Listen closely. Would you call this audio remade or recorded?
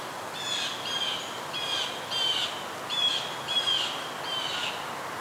recorded